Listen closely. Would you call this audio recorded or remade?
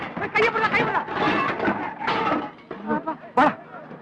recorded